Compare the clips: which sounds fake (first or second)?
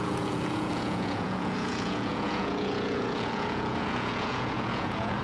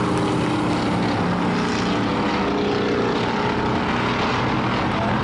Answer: first